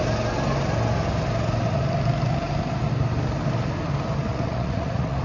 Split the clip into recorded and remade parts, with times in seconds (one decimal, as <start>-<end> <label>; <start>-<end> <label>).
0.0-4.3 recorded; 4.3-5.2 remade